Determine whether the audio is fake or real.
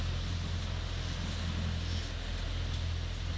real